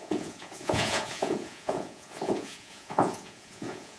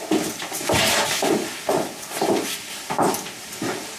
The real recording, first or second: second